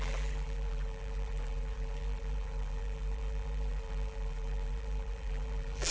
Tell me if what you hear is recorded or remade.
remade